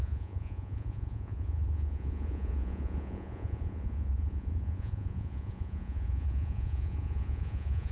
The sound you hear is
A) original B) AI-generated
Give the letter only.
B